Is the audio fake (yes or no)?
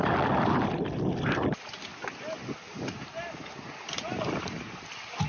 no